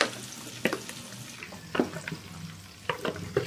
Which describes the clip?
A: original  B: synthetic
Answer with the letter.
A